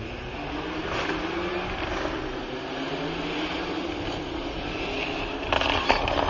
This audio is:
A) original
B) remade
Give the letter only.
A